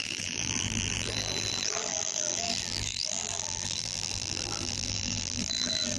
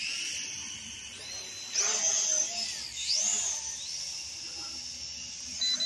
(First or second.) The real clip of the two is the second